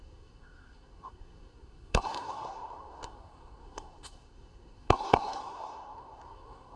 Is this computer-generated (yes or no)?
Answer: yes